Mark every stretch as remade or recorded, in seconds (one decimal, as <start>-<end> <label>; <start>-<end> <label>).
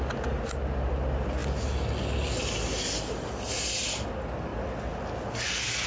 0.0-5.9 recorded